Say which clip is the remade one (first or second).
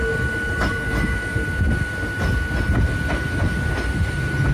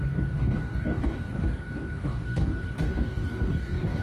second